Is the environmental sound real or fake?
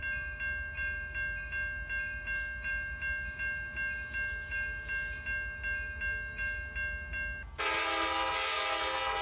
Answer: real